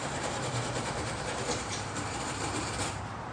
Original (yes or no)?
no